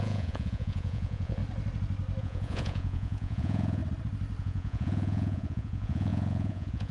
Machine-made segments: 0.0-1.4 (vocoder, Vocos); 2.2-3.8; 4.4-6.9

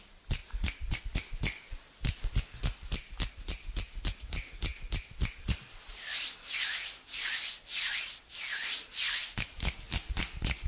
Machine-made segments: 0.4-1.0 (vocoder, Vocos)

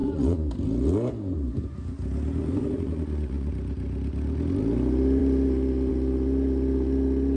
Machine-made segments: 0.0-0.5 (vocoder, Vocos); 2.4-3.5

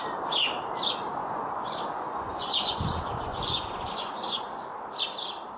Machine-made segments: 1.2-4.6 (vocoder, Vocos)

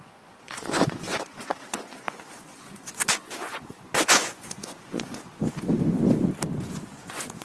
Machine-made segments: 0.0-5.3 (vocoder, Vocos); 6.6-7.4